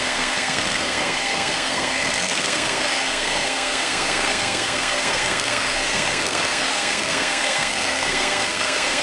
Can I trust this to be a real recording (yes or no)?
no